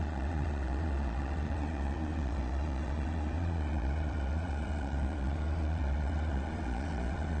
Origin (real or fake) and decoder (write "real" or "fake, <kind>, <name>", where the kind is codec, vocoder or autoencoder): fake, vocoder, Vocos